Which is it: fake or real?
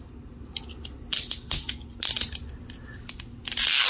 real